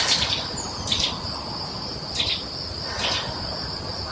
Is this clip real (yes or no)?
yes